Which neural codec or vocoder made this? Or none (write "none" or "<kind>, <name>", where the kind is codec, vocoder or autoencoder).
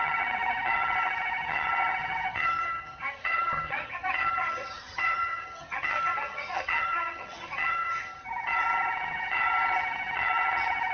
vocoder, HiFi-GAN